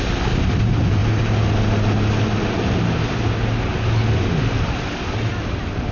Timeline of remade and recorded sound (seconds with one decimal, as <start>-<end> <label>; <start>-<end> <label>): 0.0-5.9 recorded